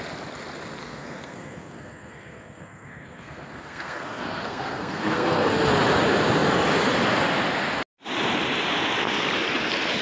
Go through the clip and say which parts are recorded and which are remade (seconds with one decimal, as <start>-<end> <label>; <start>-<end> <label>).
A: 0.0-0.8 recorded; 0.8-5.5 remade; 5.5-10.0 recorded